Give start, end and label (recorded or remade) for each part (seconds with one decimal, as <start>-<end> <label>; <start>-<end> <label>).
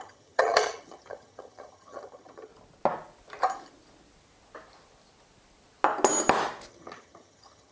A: 0.0-2.5 remade; 2.5-6.7 recorded; 6.7-7.7 remade